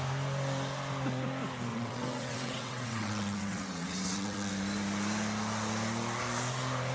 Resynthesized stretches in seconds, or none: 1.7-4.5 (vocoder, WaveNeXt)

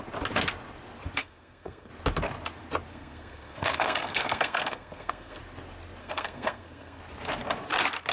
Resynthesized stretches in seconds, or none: 1.2-1.9 (codec, SNAC); 2.9-5.4; 6.0-7.0